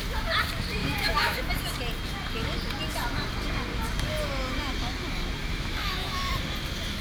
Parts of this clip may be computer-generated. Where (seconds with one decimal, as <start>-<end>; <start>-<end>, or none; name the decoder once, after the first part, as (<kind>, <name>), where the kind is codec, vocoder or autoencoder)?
0.8-1.5 (autoencoder, DAC-VAE); 5.4-6.3